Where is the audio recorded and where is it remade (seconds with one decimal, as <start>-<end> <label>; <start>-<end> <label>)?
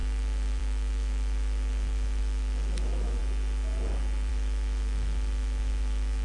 0.0-3.2 remade; 3.2-4.3 recorded; 4.3-6.2 remade